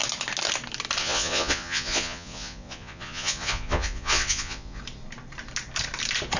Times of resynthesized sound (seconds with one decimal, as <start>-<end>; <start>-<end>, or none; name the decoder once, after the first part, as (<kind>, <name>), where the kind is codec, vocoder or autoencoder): 1.0-4.8 (vocoder, Vocos)